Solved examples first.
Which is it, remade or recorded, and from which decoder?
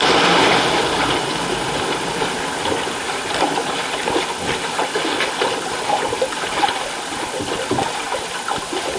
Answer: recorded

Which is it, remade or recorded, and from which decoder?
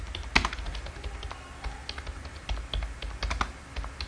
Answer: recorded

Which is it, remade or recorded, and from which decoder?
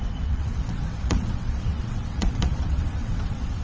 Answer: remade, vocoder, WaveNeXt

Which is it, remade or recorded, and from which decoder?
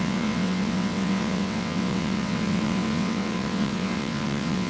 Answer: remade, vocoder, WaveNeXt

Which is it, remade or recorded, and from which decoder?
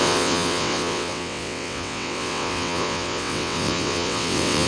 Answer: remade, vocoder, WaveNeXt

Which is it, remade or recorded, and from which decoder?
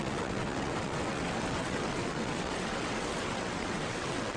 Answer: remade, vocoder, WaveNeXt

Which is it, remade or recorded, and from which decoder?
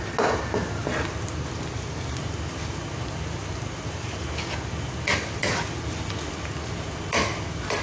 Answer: recorded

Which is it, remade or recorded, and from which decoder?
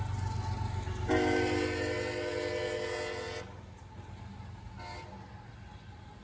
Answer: recorded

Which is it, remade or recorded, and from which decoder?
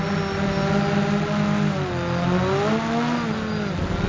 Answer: recorded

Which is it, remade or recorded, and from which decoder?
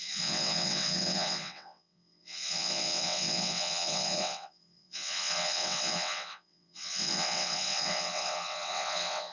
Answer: remade, vocoder, WaveNeXt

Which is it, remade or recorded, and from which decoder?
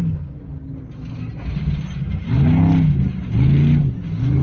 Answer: recorded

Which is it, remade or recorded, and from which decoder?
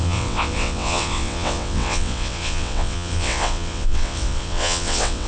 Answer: remade, vocoder, WaveNeXt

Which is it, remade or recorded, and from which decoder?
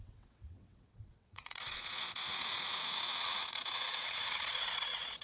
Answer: remade, vocoder, WaveNeXt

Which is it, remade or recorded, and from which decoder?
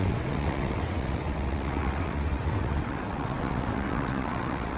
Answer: remade, vocoder, WaveNeXt